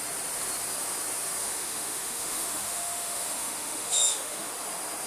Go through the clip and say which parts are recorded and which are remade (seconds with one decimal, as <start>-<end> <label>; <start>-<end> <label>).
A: 0.0-1.4 recorded; 1.4-4.5 remade; 4.5-5.1 recorded